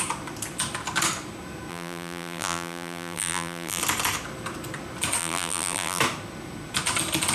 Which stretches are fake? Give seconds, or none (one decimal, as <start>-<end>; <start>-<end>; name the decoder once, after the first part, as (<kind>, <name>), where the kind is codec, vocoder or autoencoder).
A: 1.7-3.8 (vocoder, BigVGAN v2); 5.2-6.0